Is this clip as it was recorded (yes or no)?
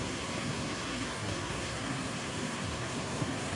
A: no